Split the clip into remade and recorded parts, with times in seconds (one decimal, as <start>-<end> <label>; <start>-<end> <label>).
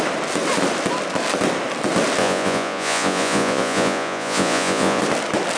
0.0-2.2 recorded; 2.2-5.0 remade; 5.0-5.6 recorded